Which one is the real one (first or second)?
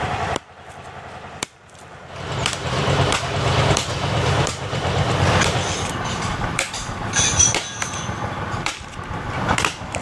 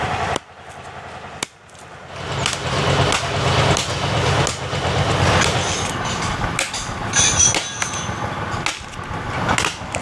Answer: second